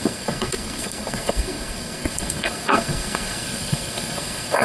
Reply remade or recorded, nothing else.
remade